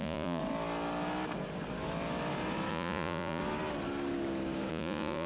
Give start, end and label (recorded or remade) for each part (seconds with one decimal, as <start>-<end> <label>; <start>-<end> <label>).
0.0-0.4 remade; 0.4-2.7 recorded; 2.7-3.4 remade; 3.4-4.7 recorded; 4.7-5.3 remade